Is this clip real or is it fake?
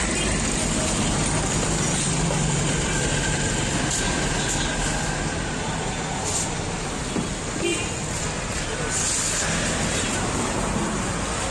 real